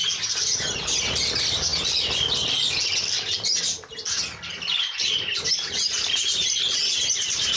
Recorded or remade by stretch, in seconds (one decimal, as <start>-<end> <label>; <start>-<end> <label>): 0.0-7.6 recorded